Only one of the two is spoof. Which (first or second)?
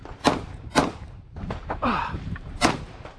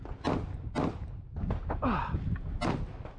first